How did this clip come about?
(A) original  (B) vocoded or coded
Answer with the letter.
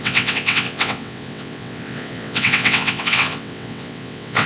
B